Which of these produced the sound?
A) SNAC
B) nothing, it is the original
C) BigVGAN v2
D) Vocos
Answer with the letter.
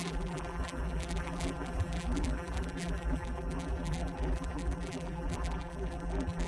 C